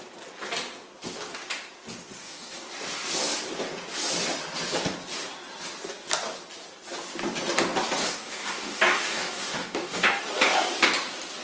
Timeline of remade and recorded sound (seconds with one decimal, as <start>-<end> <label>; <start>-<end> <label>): 0.0-2.2 recorded; 2.2-2.7 remade; 2.7-8.0 recorded; 8.0-10.2 remade; 10.2-11.4 recorded